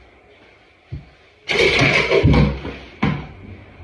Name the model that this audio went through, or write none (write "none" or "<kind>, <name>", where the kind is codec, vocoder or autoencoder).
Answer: none